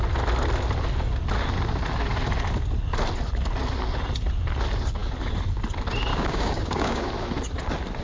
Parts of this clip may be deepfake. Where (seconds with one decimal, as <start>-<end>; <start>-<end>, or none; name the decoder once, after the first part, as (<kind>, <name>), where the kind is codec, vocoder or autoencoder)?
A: 6.1-7.1 (codec, DAC)